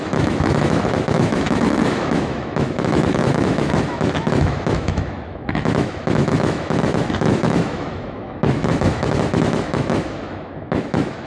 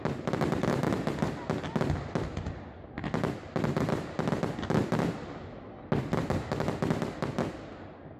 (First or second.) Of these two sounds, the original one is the second